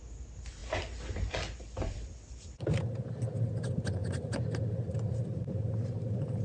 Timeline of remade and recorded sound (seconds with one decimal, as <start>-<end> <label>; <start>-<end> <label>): 0.0-6.4 recorded